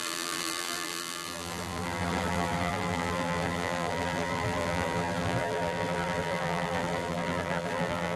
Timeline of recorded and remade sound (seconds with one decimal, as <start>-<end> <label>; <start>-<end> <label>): 0.0-8.2 remade